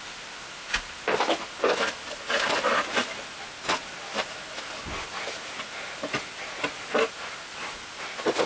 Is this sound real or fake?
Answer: real